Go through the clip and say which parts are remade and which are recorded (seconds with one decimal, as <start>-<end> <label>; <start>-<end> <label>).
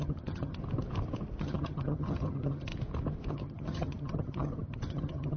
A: 0.0-0.6 remade; 0.6-1.4 recorded; 1.4-2.7 remade; 2.7-3.3 recorded; 3.3-5.4 remade